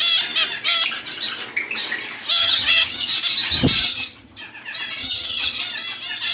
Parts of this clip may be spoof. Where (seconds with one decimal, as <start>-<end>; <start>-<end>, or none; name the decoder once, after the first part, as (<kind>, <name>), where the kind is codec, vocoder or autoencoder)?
2.4-3.0 (vocoder, HiFi-GAN); 3.9-4.4; 5.0-5.6